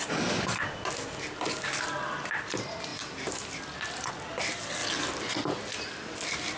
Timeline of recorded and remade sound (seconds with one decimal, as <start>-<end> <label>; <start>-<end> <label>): 0.0-6.6 recorded

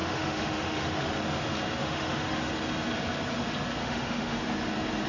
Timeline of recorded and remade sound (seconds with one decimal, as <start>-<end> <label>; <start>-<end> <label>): 0.0-1.1 remade; 1.1-1.8 recorded; 1.8-2.4 remade; 2.4-3.8 recorded; 3.8-4.4 remade; 4.4-5.1 recorded

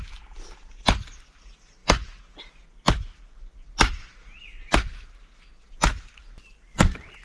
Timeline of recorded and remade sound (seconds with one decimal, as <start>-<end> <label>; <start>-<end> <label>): 0.0-7.2 recorded

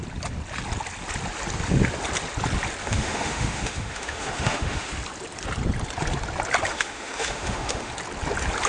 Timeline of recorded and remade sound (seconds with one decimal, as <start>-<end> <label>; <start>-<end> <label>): 0.0-2.8 recorded; 2.8-4.9 remade; 4.9-6.7 recorded; 6.7-7.9 remade; 7.9-8.7 recorded

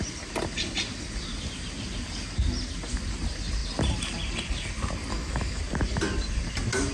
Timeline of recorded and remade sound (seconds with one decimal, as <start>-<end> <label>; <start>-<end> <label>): 0.0-5.1 recorded; 5.1-5.6 remade; 5.6-6.9 recorded

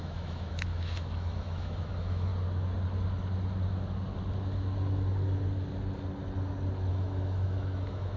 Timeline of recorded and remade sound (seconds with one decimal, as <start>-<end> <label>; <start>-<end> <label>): 0.0-2.3 remade; 2.3-6.9 recorded; 6.9-8.2 remade

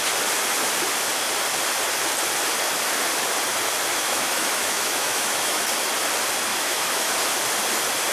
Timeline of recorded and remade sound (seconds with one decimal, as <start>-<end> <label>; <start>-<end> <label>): 0.0-3.9 recorded; 3.9-5.6 remade; 5.6-6.5 recorded; 6.5-7.1 remade; 7.1-8.1 recorded

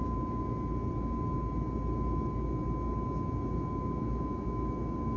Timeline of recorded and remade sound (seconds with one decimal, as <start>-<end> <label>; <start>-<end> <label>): 0.0-0.4 remade; 0.4-3.5 recorded; 3.5-5.2 remade